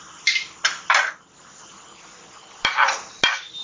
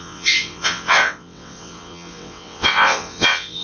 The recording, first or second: first